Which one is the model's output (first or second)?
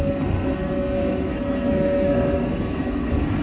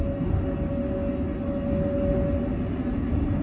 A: first